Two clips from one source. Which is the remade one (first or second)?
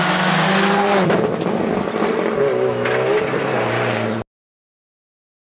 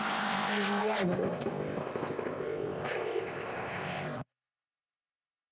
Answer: second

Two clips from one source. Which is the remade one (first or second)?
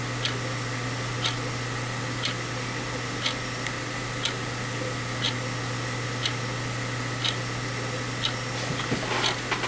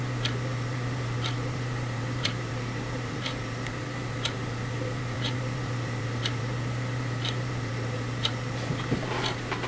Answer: second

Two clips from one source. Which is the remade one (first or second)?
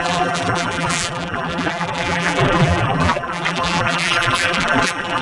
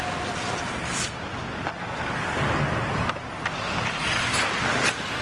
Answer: first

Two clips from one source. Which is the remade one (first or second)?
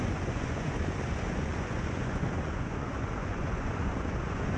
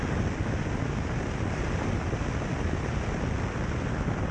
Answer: first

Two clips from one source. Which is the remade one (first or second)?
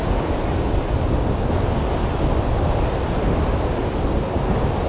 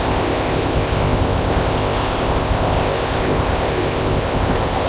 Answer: second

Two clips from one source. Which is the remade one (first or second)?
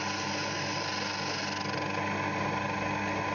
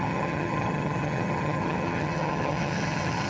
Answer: second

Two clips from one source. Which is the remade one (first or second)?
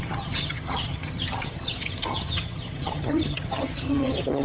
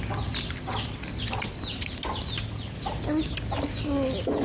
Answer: first